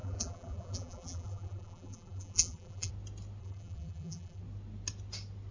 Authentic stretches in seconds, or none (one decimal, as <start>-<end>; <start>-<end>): 2.9-3.4; 4.4-5.5